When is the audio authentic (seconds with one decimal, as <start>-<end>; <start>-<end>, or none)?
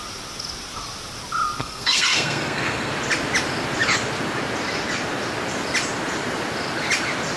0.0-1.6; 2.9-7.4